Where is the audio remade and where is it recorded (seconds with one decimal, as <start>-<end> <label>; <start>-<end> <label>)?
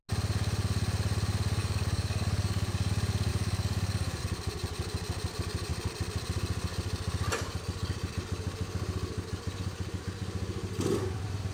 0.0-1.6 recorded; 1.6-2.9 remade; 2.9-3.3 recorded; 3.3-4.2 remade; 4.2-11.5 recorded